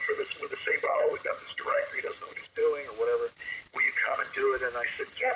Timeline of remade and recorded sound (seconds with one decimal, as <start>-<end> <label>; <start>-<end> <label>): 0.0-2.6 remade; 2.6-3.7 recorded; 3.7-4.4 remade; 4.4-5.0 recorded; 5.0-5.4 remade